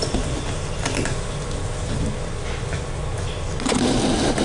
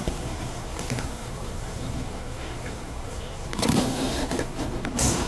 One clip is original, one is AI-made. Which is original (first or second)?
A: first